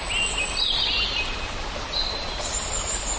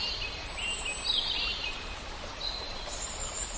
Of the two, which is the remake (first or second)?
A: second